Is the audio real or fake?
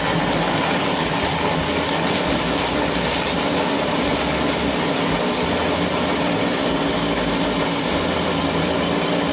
real